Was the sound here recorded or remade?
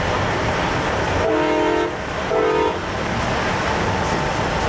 recorded